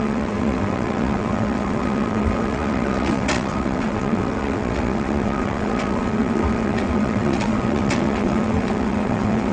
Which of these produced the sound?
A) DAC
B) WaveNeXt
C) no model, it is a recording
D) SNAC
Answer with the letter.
B